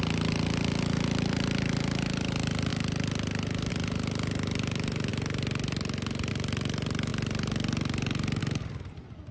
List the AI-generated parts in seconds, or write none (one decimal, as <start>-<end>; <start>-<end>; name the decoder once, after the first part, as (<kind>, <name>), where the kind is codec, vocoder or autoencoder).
none